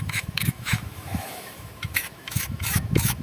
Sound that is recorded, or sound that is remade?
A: remade